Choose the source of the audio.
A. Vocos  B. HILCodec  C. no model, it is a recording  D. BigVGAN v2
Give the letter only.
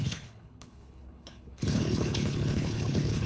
B